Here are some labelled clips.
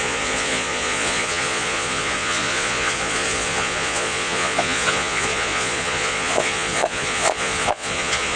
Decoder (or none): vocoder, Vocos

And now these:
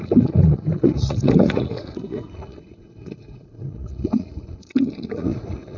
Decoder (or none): vocoder, Vocos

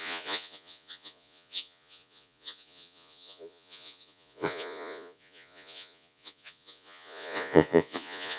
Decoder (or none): vocoder, Vocos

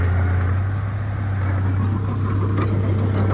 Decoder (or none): none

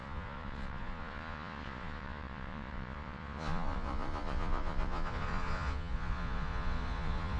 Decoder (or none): vocoder, Vocos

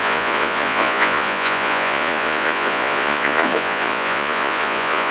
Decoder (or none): vocoder, Vocos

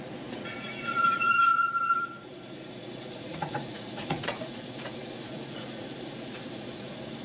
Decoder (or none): vocoder, Vocos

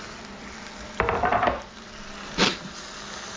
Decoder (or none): none